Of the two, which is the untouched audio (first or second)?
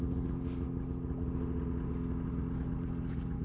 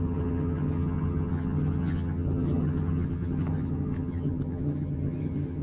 first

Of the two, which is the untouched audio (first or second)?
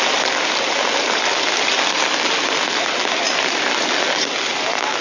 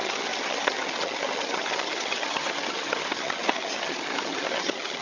first